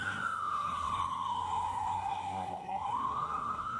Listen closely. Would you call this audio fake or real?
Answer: fake